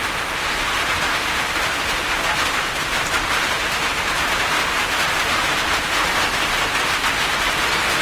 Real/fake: fake